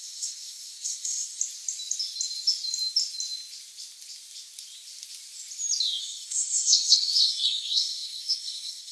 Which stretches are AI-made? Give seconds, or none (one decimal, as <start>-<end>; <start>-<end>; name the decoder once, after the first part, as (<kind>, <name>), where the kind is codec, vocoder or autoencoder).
0.0-1.4 (codec, SNAC); 6.0-8.9